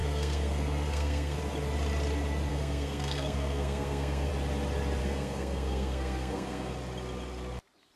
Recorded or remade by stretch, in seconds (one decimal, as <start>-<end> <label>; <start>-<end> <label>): 0.0-1.4 remade; 1.4-2.5 recorded; 2.5-4.3 remade; 4.3-5.0 recorded; 5.0-6.7 remade; 6.7-8.0 recorded